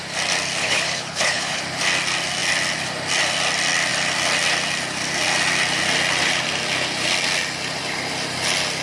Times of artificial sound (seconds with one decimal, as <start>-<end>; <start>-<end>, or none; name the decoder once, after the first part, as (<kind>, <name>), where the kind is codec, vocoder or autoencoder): 0.6-1.6 (codec, HILCodec)